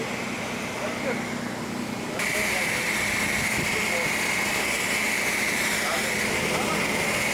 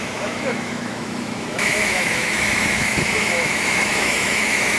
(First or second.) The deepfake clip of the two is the second